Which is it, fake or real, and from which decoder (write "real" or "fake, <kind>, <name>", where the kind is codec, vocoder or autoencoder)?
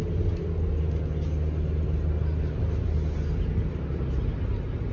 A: real